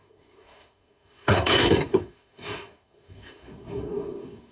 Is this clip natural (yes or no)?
no